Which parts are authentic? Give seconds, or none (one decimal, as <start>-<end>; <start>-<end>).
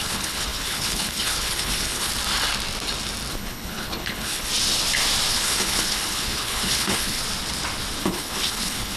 2.1-3.3; 4.5-5.3; 7.2-8.0